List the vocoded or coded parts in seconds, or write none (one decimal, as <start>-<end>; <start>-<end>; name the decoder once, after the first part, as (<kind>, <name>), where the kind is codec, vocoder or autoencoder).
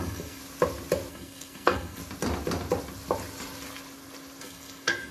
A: 0.0-0.4 (codec, SNAC); 1.1-2.0; 4.4-5.1